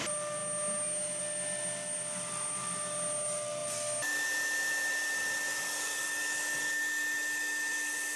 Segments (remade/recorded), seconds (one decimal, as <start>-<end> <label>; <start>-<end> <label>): 0.0-8.2 recorded